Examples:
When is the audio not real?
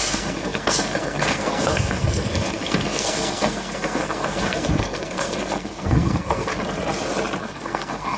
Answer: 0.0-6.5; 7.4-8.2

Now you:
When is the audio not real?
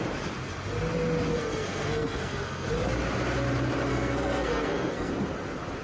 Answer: 1.3-2.7; 3.9-5.1